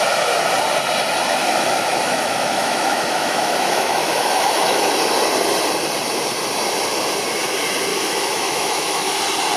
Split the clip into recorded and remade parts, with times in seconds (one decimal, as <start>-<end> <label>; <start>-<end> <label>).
0.0-1.4 recorded; 1.4-4.9 remade; 4.9-7.9 recorded; 7.9-9.2 remade; 9.2-9.6 recorded